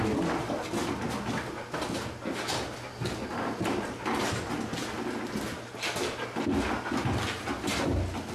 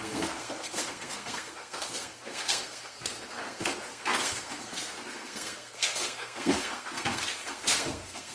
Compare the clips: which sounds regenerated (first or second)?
second